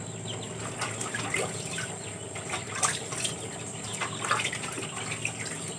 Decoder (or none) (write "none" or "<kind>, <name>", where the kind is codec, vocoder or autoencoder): none